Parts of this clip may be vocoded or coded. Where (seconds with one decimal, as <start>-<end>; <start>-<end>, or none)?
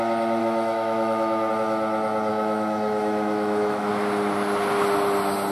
0.4-1.5; 2.3-3.9